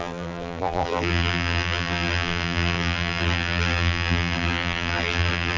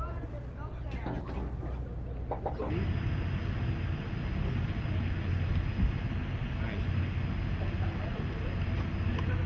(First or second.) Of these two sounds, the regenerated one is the first